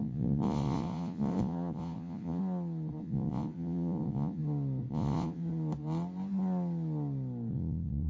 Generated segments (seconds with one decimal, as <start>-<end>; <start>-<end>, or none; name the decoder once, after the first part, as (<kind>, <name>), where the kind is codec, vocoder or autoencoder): 0.0-2.4 (vocoder, Vocos); 3.0-4.4; 4.9-5.4; 7.5-8.1